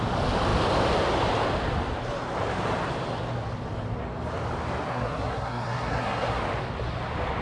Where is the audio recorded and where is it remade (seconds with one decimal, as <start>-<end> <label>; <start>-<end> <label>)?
0.0-4.9 recorded; 4.9-6.4 remade; 6.4-7.4 recorded